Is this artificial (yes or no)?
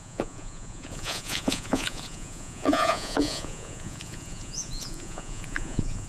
yes